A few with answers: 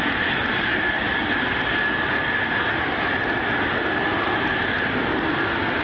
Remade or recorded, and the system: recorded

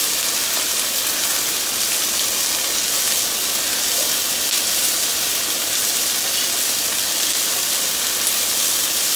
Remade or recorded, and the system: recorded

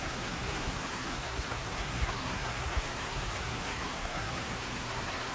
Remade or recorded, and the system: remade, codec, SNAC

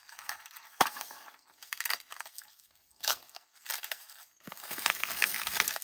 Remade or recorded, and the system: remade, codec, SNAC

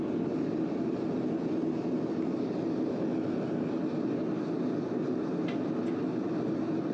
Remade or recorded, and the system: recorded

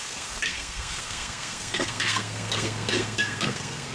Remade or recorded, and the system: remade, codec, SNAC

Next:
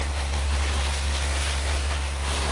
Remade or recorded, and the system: remade, codec, SNAC